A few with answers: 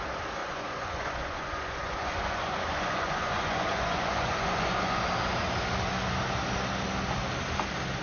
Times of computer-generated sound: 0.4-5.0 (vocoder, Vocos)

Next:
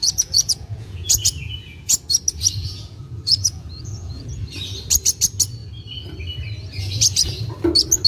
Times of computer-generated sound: 0.0-2.0 (vocoder, Vocos); 2.6-4.4

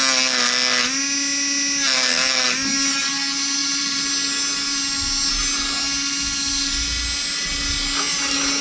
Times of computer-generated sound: 3.6-4.1 (vocoder, BigVGAN v2)

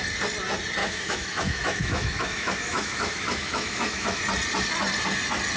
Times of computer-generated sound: 0.8-4.2 (autoencoder, DAC-VAE)

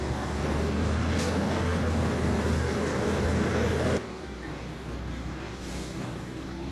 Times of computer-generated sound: 0.0-6.7 (codec, DAC)

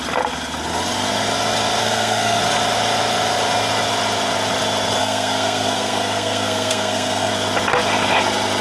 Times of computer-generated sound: 1.8-2.4 (codec, SNAC); 5.0-7.3

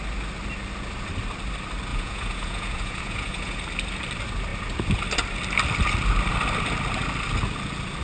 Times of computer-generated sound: 1.9-3.6 (vocoder, Vocos)